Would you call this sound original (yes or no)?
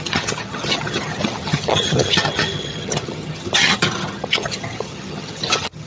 no